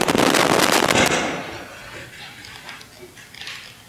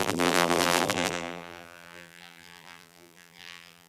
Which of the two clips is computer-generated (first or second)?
second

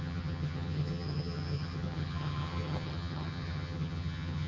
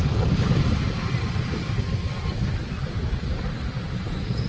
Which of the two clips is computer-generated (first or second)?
first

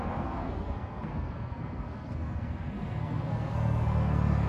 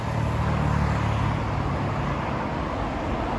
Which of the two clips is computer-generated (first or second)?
first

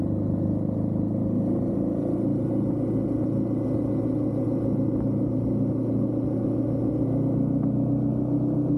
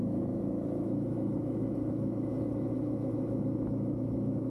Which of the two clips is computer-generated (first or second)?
second